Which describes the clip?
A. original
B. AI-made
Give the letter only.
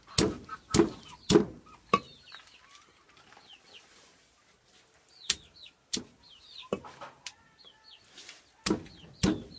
A